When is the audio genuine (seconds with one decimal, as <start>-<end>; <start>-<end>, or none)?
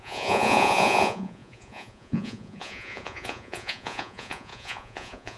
none